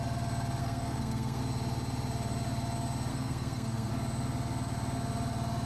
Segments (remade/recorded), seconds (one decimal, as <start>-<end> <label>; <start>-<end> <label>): 0.0-0.6 recorded; 0.6-1.4 remade; 1.4-3.1 recorded; 3.1-3.9 remade; 3.9-5.7 recorded